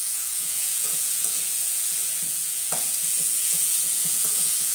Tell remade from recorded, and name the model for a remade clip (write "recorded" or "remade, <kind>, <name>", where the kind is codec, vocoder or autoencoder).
remade, vocoder, Vocos